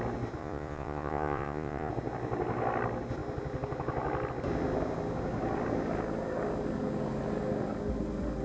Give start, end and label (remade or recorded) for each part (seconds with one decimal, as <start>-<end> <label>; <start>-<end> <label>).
0.0-0.4 recorded; 0.4-1.9 remade; 1.9-8.4 recorded